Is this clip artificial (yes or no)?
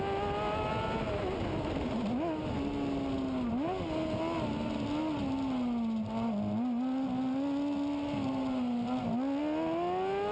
no